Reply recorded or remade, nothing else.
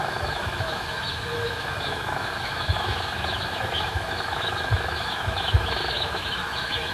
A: remade